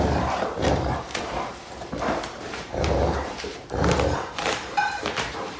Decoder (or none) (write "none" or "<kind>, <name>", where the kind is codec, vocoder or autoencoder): vocoder, BigVGAN v2